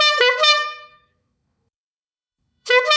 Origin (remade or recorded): remade